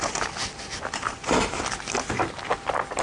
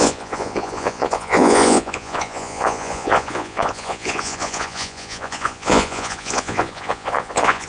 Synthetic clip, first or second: second